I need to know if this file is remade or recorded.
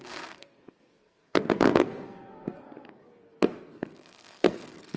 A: remade